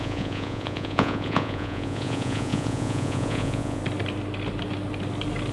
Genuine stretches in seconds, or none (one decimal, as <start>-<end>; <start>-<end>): 3.8-5.5